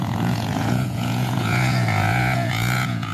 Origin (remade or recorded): remade